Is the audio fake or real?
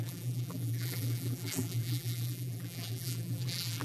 fake